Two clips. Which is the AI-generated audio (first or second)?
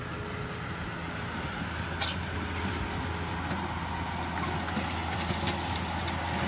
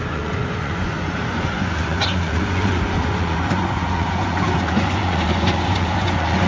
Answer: second